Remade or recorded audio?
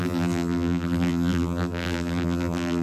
remade